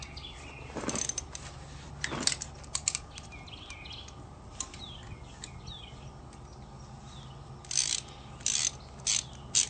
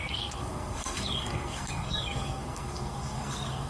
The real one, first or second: first